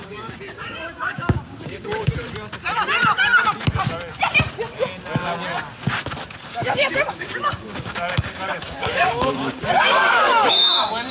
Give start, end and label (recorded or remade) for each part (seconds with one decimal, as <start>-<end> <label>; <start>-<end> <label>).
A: 0.0-2.1 remade; 2.1-6.4 recorded; 6.4-11.1 remade